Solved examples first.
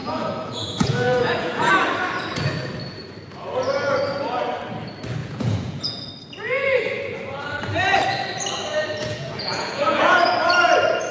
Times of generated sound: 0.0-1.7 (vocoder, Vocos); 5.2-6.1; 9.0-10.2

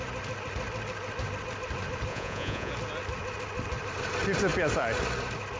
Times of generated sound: 2.1-2.7 (vocoder, Vocos)

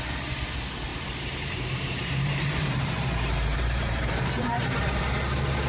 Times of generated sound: 0.9-2.9 (vocoder, BigVGAN v2); 3.5-5.0

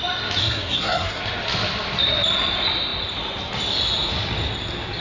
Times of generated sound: 0.4-1.2 (codec, SNAC)

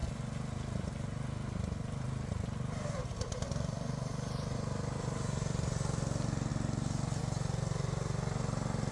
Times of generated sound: 0.0-4.1 (vocoder, BigVGAN v2); 6.5-7.2

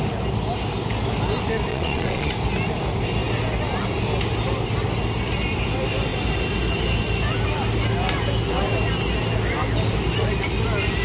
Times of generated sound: 1.7-2.3 (vocoder, Vocos)